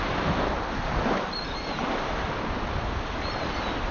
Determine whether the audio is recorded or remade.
recorded